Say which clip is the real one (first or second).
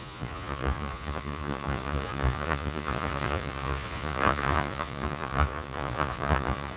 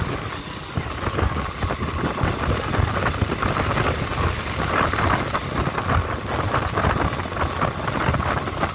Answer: second